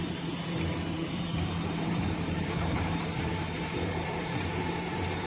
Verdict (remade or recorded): remade